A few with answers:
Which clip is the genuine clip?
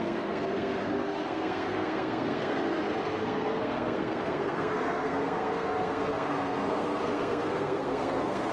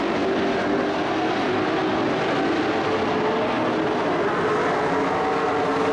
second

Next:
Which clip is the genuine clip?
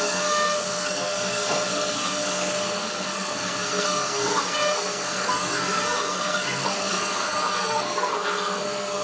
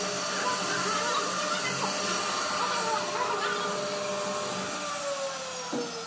second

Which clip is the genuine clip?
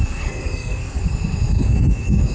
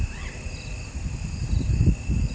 second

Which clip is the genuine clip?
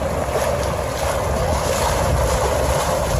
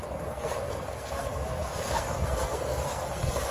first